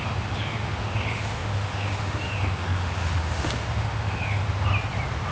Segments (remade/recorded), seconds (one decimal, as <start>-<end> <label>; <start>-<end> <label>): 0.0-4.4 remade; 4.4-5.3 recorded